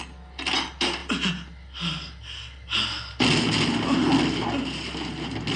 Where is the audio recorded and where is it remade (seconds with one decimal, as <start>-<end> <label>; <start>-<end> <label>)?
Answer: 0.0-5.6 recorded